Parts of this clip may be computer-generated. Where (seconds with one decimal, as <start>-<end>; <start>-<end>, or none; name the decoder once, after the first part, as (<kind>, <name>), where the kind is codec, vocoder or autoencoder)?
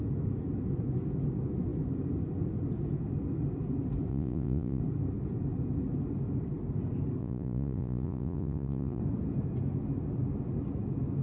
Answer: 4.1-4.8 (vocoder, Vocos); 7.2-9.0